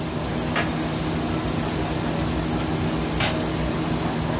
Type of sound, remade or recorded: recorded